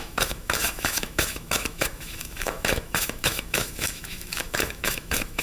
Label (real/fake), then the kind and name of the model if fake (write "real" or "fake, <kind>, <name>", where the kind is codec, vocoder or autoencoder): fake, autoencoder, DAC-VAE